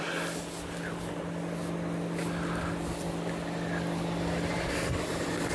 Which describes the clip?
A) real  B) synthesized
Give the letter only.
A